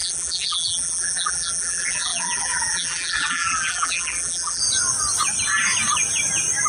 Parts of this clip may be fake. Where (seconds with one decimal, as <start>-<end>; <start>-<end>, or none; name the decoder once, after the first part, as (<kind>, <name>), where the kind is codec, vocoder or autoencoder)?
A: 0.0-4.6 (vocoder, BigVGAN v2)

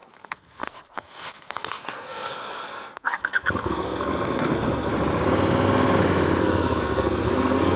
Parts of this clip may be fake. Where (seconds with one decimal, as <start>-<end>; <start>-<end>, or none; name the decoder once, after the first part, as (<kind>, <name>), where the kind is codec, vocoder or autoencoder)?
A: 0.0-4.9 (codec, SNAC); 6.4-7.8